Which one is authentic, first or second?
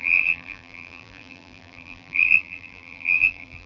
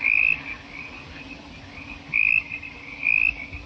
second